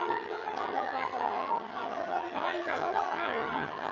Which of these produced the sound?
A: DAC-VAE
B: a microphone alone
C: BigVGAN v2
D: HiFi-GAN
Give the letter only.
D